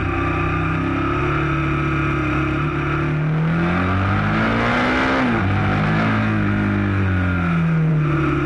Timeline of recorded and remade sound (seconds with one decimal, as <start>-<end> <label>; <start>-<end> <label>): 0.0-8.5 recorded